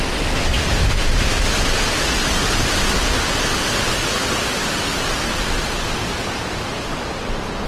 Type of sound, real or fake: real